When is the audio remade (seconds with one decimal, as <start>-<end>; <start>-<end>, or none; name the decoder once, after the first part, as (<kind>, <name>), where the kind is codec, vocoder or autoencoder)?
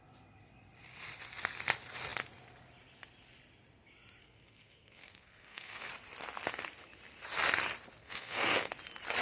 4.2-5.9 (codec, SNAC); 8.0-8.7